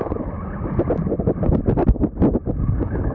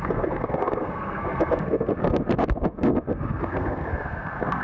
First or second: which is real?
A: first